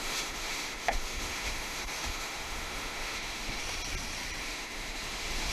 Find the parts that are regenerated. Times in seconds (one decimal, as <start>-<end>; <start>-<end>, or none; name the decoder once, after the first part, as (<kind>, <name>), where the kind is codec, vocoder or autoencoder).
0.0-3.6 (autoencoder, DAC-VAE); 4.4-5.5